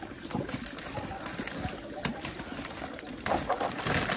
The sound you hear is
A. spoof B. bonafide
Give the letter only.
B